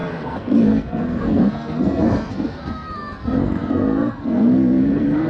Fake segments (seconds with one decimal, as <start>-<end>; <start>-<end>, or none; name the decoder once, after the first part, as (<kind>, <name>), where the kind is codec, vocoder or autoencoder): 0.0-5.3 (codec, SNAC)